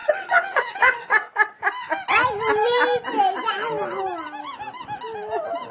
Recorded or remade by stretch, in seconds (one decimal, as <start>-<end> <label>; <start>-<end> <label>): 0.0-1.3 remade; 1.3-5.7 recorded